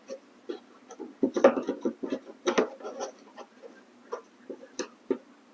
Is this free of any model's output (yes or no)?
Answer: yes